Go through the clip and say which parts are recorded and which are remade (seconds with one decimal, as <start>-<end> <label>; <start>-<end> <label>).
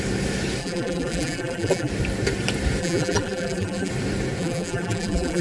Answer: 0.0-0.6 recorded; 0.6-1.9 remade; 1.9-2.8 recorded; 2.8-3.9 remade; 3.9-4.4 recorded; 4.4-5.4 remade